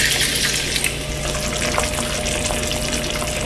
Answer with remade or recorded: recorded